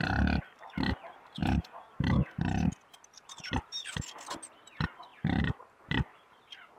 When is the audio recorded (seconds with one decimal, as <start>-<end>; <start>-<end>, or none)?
0.0-1.4; 2.2-3.1; 3.9-5.1; 6.3-6.8